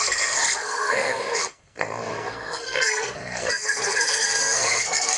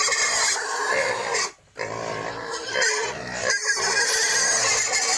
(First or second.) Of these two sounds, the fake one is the first